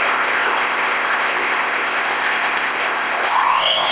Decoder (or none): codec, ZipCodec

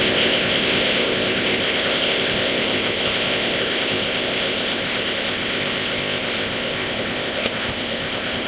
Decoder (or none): codec, ZipCodec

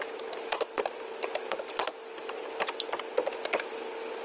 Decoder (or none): none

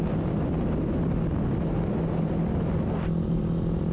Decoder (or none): none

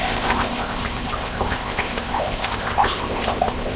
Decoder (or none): codec, ZipCodec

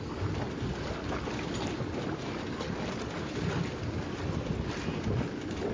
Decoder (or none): none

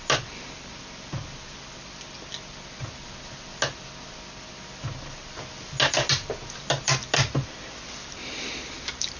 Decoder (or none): none